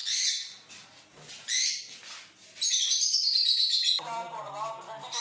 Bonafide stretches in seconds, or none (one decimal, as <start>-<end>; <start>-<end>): 0.0-2.7; 4.7-5.2